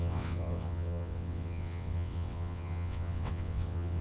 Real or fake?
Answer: fake